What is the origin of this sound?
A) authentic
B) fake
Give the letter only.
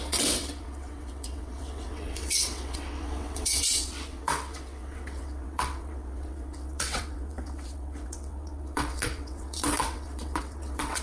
B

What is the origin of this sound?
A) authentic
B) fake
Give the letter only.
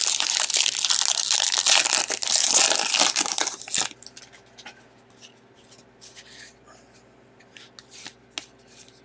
A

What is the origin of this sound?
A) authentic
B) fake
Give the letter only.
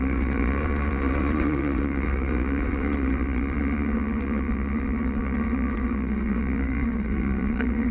B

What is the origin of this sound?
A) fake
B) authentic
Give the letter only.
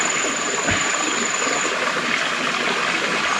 B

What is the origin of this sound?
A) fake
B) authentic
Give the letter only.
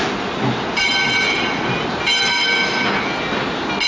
B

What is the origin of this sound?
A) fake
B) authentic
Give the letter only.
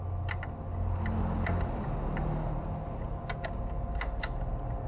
B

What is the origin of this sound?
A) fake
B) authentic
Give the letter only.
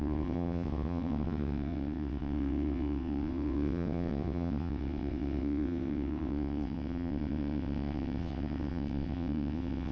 A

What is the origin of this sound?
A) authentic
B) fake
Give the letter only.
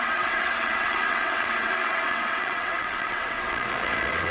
B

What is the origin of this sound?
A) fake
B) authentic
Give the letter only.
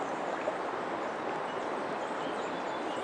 B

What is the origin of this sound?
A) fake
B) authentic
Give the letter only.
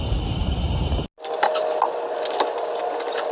B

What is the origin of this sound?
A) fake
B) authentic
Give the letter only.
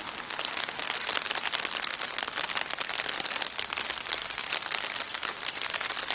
B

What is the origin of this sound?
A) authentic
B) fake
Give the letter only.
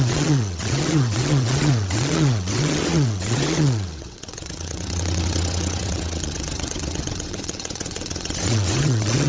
B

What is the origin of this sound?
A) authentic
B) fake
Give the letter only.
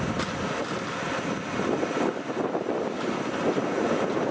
A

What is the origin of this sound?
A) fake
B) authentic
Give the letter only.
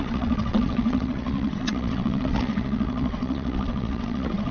A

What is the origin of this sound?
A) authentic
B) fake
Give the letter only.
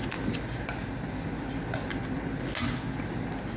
A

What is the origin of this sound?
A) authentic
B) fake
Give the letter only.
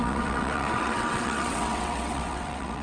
B